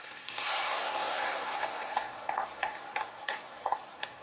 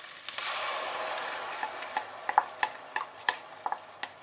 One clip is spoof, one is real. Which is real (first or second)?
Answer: second